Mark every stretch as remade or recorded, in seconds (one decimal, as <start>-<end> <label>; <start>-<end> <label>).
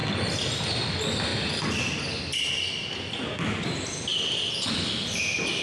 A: 0.0-5.6 recorded